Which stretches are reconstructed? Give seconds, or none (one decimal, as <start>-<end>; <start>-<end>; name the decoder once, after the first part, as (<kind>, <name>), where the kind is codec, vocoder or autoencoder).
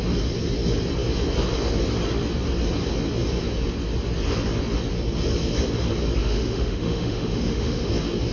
6.2-7.9 (autoencoder, DAC-VAE)